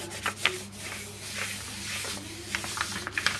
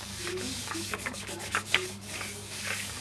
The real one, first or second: first